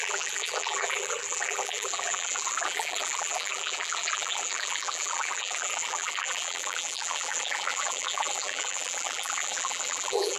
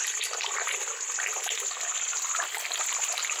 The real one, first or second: second